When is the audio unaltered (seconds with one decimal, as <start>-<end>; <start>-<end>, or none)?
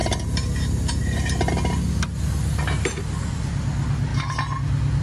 0.0-5.0